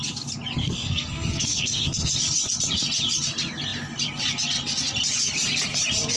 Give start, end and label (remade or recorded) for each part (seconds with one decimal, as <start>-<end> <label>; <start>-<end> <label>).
0.0-0.6 recorded; 0.6-2.1 remade; 2.1-6.2 recorded